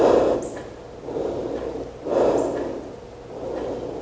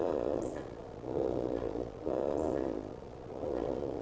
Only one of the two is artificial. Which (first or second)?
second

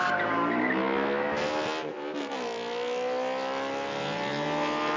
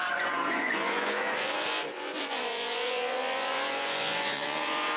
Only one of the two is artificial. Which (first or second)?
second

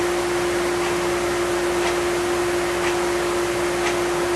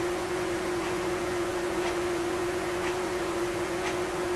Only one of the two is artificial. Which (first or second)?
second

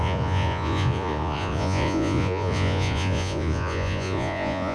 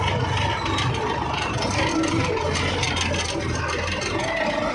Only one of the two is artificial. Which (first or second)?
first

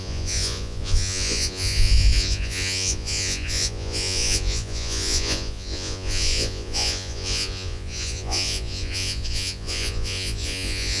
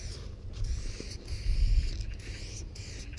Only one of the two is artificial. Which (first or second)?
first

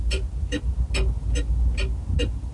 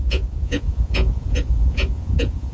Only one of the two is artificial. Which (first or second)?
second